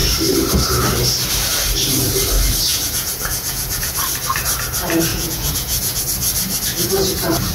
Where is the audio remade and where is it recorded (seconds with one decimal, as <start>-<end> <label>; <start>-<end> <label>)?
0.0-2.7 recorded; 2.7-3.9 remade; 3.9-5.1 recorded; 5.1-6.0 remade; 6.0-7.5 recorded